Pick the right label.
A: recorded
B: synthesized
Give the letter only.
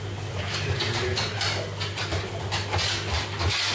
A